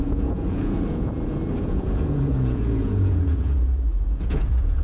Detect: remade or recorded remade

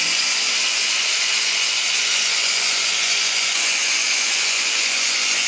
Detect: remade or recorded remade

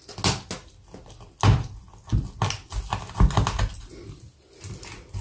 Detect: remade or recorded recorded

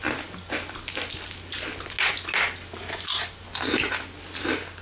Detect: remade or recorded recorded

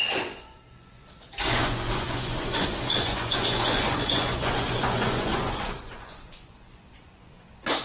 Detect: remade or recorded remade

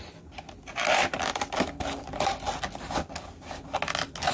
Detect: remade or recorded recorded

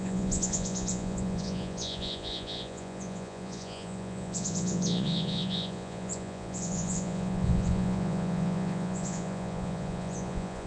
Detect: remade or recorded remade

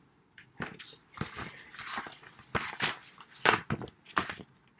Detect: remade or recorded recorded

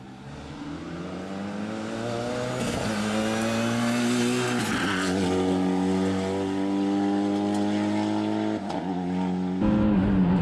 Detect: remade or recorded recorded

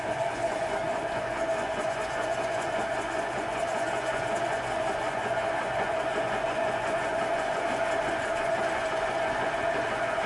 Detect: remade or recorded remade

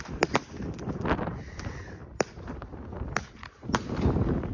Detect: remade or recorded recorded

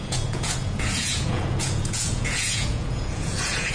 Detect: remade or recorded remade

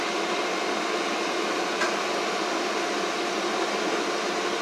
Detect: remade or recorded recorded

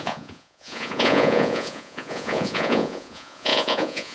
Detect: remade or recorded remade